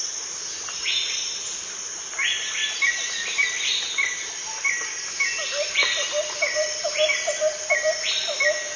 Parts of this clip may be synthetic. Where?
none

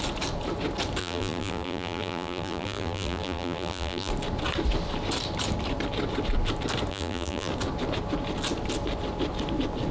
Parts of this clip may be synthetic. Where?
1.0-4.1 (vocoder, BigVGAN v2); 6.9-7.5

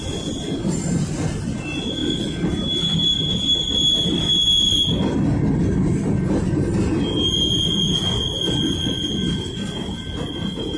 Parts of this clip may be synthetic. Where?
none

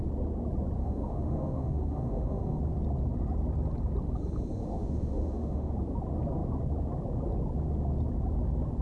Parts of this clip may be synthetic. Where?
0.8-2.6 (autoencoder, DAC-VAE); 4.6-5.7

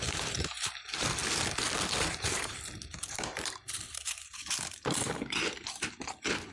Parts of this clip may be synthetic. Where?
0.0-1.2 (vocoder, BigVGAN v2); 2.1-6.5